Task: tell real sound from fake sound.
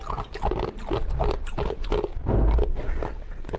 real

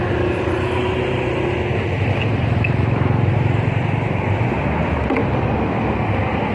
real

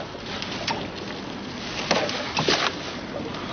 real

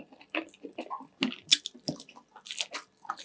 real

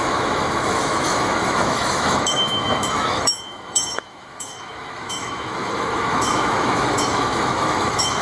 fake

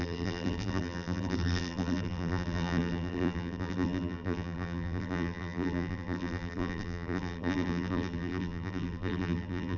fake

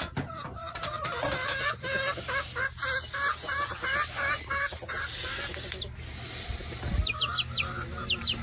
real